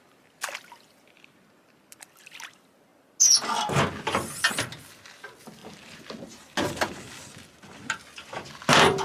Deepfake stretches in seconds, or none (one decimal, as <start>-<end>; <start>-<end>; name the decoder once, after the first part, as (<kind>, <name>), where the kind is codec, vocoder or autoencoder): none